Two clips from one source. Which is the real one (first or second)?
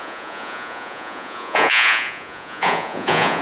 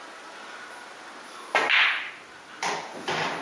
second